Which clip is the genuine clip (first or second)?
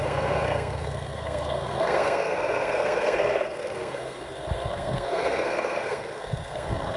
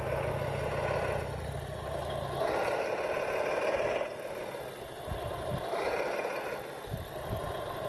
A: second